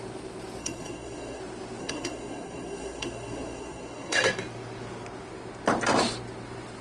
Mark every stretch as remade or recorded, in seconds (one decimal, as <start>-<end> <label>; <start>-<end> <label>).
0.0-0.6 recorded; 0.6-1.4 remade; 1.4-1.8 recorded; 1.8-4.2 remade; 4.2-6.8 recorded